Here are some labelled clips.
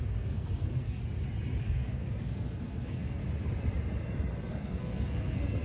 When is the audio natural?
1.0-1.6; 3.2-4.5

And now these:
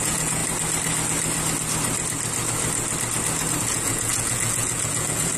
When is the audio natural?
0.4-3.6